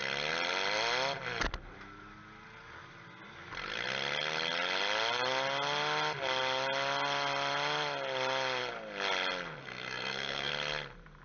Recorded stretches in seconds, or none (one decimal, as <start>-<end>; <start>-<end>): 0.0-9.6; 10.5-11.2